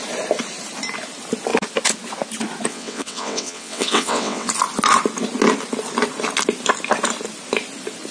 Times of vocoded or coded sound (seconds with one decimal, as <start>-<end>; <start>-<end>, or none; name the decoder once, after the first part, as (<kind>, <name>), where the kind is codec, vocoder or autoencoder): 2.7-4.5 (vocoder, WaveNeXt)